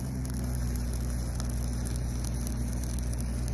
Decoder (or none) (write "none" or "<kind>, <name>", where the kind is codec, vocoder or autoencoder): none